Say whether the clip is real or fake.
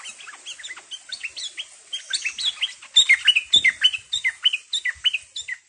real